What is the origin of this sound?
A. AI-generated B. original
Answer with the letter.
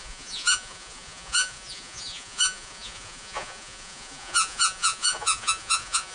A